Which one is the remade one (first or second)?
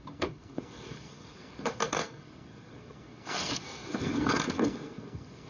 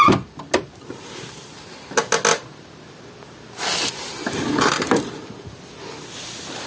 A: first